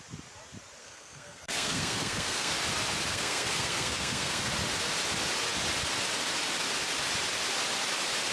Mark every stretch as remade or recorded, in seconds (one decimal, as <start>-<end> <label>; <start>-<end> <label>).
0.0-0.8 recorded; 0.8-2.5 remade; 2.5-3.1 recorded; 3.1-4.5 remade; 4.5-8.3 recorded